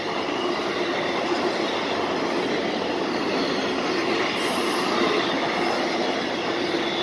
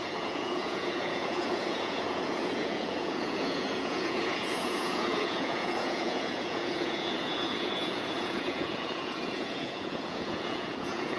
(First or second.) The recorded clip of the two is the first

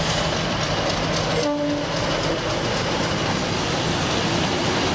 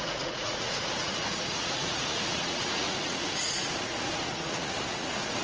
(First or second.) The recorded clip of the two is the first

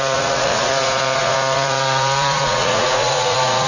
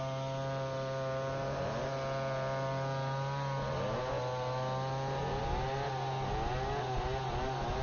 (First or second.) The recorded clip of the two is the second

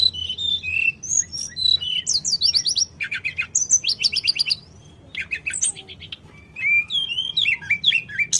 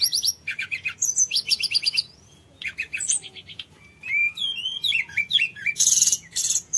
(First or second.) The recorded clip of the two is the first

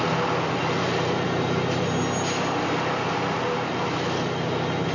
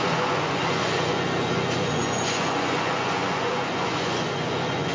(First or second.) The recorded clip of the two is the first